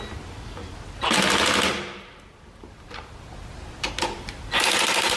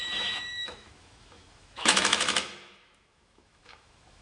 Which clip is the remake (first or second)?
second